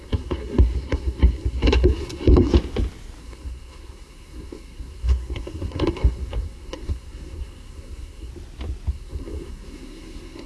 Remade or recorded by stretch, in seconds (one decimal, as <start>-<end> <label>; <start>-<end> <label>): 0.0-2.5 remade; 2.5-3.2 recorded; 3.2-8.3 remade; 8.3-8.9 recorded; 8.9-10.5 remade